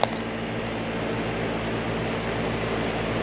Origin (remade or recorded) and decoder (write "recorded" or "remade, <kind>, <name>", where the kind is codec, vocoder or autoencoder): recorded